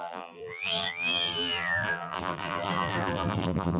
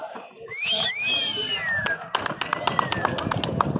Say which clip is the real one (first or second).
second